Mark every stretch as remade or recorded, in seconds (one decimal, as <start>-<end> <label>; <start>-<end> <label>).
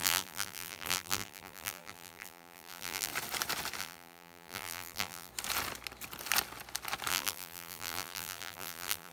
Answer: 0.0-3.1 remade; 3.1-3.8 recorded; 3.8-5.3 remade; 5.3-7.1 recorded; 7.1-9.1 remade